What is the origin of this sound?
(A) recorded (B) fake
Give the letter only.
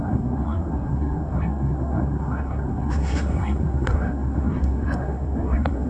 B